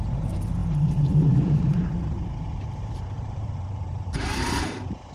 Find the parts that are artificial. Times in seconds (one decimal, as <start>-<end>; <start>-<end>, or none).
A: 0.6-3.5